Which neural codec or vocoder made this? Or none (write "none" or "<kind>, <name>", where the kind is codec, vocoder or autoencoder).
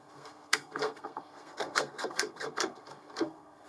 codec, SNAC